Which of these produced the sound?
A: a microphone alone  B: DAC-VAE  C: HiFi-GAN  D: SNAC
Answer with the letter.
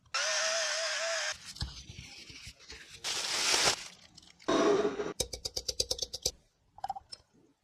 A